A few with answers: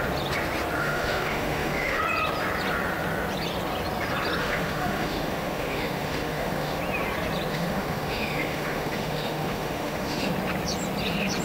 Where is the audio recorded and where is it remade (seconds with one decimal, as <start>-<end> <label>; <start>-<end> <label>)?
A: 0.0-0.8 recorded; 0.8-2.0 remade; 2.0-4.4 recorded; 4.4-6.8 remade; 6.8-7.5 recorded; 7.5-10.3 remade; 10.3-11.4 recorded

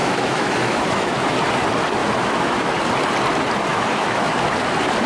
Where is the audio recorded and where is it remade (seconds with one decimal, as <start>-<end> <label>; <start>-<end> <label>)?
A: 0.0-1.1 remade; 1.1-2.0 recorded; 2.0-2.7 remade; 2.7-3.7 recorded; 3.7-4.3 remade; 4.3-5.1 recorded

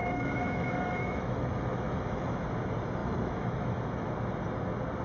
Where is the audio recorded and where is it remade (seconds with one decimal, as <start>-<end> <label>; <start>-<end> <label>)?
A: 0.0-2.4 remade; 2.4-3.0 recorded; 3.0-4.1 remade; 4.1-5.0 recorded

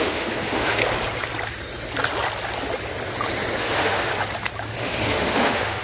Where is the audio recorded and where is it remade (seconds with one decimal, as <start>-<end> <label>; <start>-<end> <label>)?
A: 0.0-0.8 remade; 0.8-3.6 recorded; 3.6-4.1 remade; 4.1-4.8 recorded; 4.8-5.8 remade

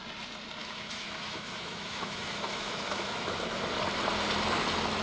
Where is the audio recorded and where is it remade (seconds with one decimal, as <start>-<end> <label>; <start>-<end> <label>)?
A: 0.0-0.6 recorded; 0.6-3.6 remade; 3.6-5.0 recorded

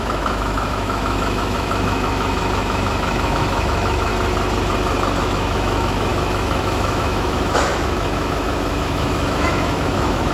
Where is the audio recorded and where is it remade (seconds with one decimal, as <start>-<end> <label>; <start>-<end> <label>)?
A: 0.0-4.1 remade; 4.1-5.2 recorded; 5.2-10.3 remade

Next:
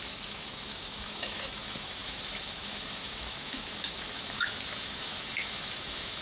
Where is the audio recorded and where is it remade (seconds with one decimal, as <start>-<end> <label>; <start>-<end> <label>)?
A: 0.0-6.2 remade

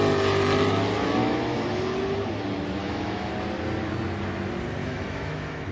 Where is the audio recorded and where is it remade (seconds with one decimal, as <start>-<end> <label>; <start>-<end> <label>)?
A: 0.0-1.2 recorded; 1.2-1.8 remade; 1.8-2.8 recorded; 2.8-3.3 remade; 3.3-4.8 recorded; 4.8-5.7 remade